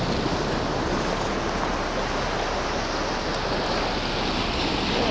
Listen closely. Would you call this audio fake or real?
real